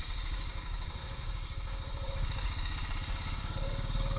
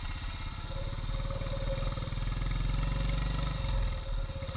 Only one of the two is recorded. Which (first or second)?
second